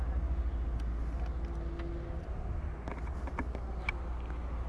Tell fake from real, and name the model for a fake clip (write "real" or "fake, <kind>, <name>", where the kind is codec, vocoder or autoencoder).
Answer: real